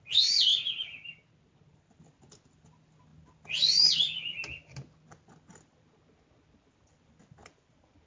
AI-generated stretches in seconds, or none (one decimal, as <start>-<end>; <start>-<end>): none